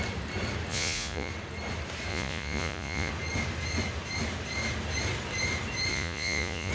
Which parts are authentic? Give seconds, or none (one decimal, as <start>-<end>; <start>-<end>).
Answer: 0.0-0.7; 1.3-2.1; 3.1-5.9